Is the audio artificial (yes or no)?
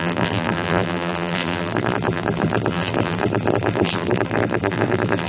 yes